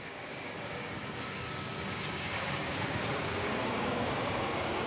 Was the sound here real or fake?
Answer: fake